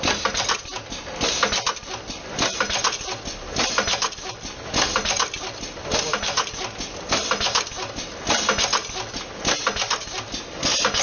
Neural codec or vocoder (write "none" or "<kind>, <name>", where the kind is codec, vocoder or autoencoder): none